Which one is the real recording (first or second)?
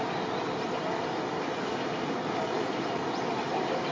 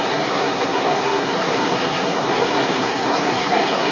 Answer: first